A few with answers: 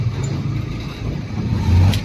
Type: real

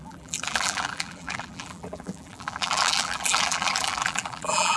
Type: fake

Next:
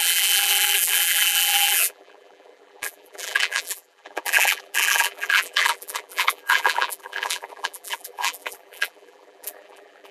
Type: fake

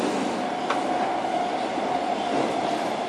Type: real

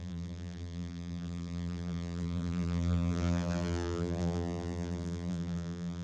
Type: fake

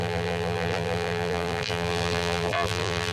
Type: fake